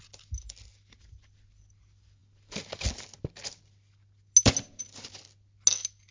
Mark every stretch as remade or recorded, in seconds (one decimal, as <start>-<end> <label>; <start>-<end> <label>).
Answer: 0.0-6.1 recorded